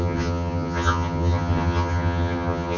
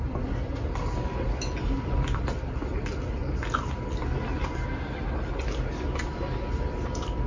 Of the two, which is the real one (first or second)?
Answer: second